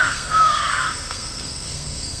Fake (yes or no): yes